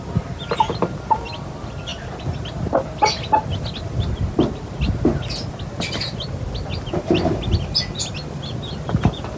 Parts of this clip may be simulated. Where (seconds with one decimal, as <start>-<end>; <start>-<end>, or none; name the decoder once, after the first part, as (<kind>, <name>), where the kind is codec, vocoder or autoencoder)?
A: none